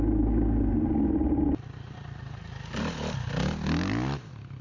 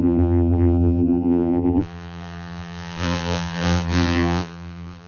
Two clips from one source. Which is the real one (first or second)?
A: first